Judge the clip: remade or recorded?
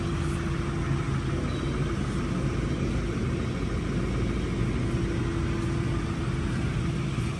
recorded